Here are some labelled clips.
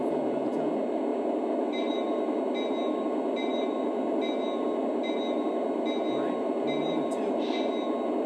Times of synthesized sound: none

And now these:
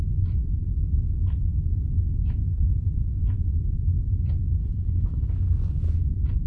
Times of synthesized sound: 4.6-5.3 (codec, HILCodec)

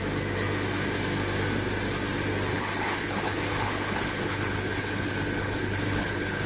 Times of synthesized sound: 2.5-6.5 (codec, HILCodec)

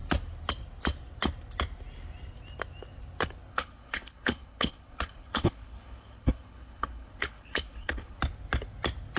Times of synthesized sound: 3.5-8.2 (codec, HILCodec)

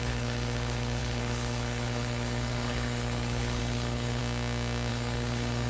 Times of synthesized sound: 0.0-4.2 (codec, HILCodec); 4.9-5.7